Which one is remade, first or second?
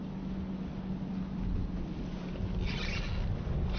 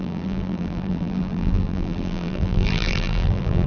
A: second